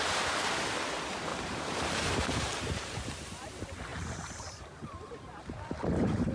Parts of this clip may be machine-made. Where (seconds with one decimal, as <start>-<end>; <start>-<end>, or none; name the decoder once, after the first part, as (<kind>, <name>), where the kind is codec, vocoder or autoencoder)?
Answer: 1.3-3.1 (vocoder, BigVGAN v2); 3.9-6.3